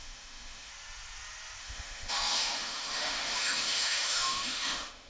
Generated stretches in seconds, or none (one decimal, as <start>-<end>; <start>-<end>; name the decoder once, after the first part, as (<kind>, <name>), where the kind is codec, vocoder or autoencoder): 0.0-0.7 (autoencoder, DAC-VAE); 1.6-5.1